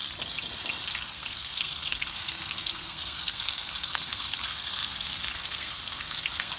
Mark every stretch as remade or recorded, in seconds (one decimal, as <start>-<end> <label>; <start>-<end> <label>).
0.0-1.1 recorded; 1.1-6.6 remade